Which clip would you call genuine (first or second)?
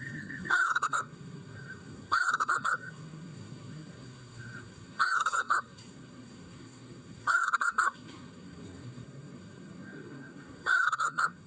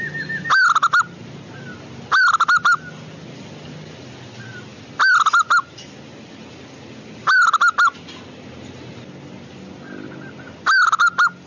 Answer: second